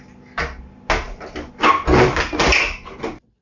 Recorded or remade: recorded